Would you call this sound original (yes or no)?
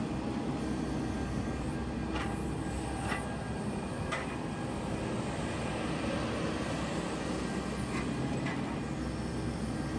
yes